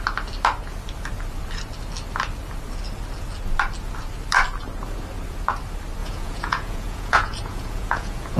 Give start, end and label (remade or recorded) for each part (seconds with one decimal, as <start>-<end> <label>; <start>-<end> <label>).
0.0-6.0 recorded; 6.0-8.4 remade